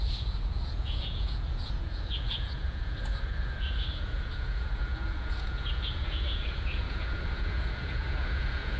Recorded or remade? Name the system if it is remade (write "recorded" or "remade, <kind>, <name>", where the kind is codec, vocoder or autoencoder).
remade, vocoder, Vocos